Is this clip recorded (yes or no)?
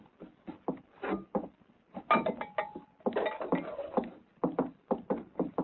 yes